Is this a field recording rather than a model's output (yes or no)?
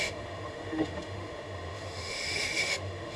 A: no